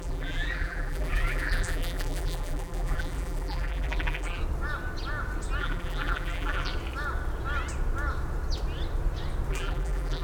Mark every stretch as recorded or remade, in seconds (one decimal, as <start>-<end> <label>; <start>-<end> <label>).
0.0-4.4 remade; 4.4-5.6 recorded; 5.6-6.7 remade; 6.7-9.5 recorded; 9.5-10.2 remade